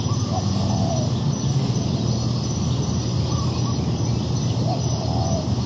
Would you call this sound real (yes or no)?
yes